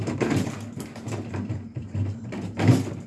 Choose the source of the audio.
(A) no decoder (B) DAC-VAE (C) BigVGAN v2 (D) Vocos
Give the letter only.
C